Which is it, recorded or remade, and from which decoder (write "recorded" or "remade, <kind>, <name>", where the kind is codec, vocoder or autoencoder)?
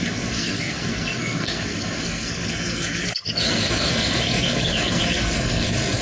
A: remade, codec, SNAC